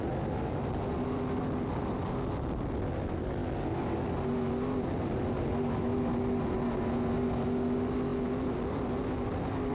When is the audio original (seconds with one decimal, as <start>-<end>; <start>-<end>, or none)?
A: 0.0-9.7